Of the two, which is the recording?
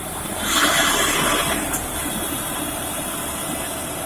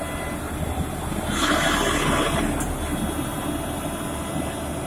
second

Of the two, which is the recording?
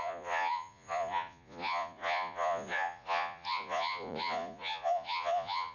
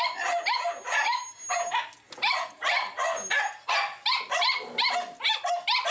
second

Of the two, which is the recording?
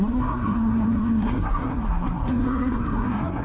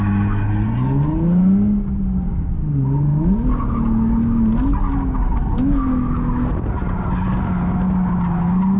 second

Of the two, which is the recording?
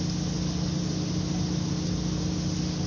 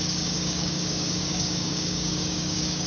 first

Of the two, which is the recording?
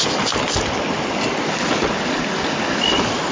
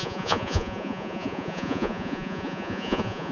first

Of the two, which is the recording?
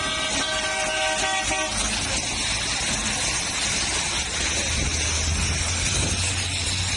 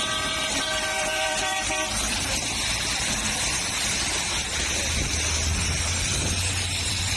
first